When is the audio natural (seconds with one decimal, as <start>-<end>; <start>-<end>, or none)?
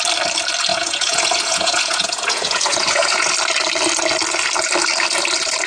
0.0-0.7; 3.3-5.7